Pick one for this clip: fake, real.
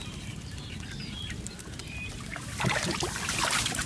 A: fake